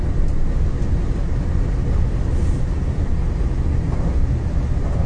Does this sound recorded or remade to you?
recorded